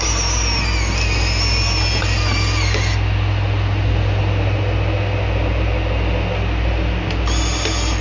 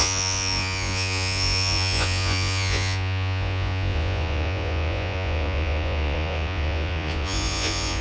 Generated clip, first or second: second